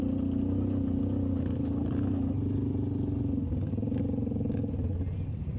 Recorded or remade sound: recorded